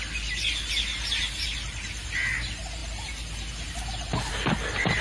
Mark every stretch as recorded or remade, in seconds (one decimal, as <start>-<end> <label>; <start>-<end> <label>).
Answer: 0.0-5.0 recorded